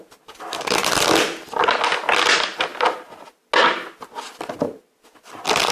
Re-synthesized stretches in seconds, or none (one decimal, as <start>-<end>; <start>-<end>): none